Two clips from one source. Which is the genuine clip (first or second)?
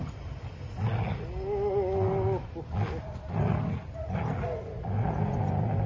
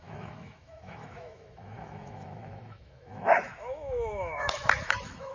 first